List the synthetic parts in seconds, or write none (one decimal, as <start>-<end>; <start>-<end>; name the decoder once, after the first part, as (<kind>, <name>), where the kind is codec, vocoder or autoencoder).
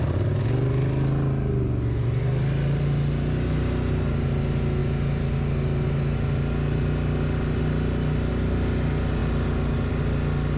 none